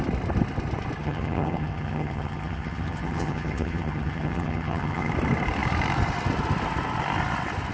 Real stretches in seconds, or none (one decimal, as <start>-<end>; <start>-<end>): 0.0-1.0; 5.1-7.7